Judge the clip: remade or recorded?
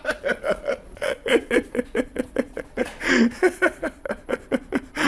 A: remade